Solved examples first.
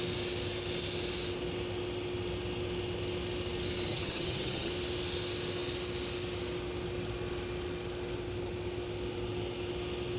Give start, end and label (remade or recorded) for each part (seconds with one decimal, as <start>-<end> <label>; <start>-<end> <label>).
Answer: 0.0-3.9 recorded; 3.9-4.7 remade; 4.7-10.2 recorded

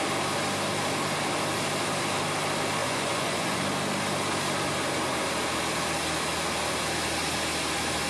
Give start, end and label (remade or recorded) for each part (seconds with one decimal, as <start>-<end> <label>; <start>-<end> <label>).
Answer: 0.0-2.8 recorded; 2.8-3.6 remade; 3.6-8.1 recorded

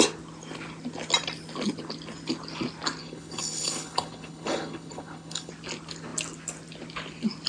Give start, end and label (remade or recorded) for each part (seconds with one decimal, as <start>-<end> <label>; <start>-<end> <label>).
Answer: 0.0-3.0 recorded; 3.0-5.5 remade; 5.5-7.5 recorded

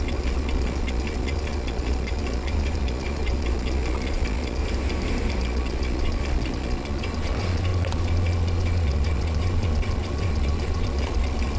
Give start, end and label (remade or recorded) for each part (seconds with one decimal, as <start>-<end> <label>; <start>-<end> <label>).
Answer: 0.0-4.6 remade; 4.6-5.4 recorded; 5.4-11.6 remade

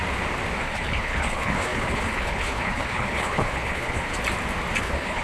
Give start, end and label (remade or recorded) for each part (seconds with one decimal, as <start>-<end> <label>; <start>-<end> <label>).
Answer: 0.0-0.6 recorded; 0.6-4.1 remade; 4.1-4.8 recorded; 4.8-5.2 remade

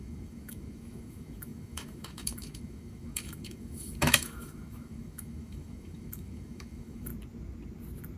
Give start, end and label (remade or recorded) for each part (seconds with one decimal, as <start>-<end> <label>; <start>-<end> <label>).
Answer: 0.0-7.1 remade; 7.1-8.2 recorded

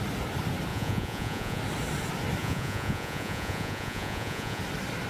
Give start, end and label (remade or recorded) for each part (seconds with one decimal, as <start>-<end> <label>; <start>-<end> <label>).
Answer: 0.0-0.7 recorded; 0.7-1.6 remade; 1.6-2.4 recorded; 2.4-4.6 remade; 4.6-5.1 recorded

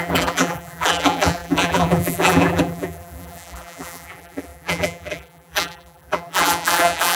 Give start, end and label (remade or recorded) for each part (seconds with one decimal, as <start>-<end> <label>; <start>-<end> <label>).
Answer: 0.0-7.2 remade